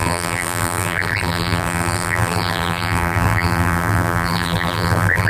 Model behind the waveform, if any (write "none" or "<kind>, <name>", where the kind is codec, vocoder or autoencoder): vocoder, BigVGAN v2